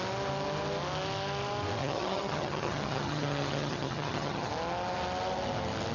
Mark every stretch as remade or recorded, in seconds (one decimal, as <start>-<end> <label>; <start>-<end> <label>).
0.0-1.8 recorded; 1.8-4.5 remade; 4.5-5.9 recorded